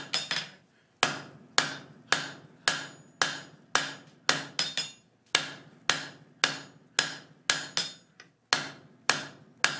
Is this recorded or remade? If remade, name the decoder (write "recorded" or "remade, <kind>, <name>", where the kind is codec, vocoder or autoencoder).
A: recorded